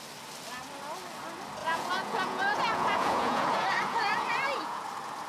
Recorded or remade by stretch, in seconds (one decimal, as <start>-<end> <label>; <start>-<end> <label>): 0.0-1.6 recorded; 1.6-4.8 remade; 4.8-5.3 recorded